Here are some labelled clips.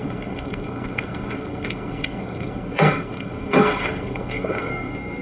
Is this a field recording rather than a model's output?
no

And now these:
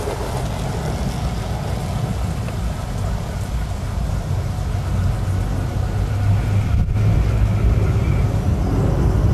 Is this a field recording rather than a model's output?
yes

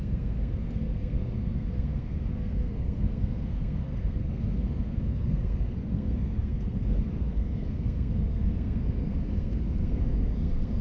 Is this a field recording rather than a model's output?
no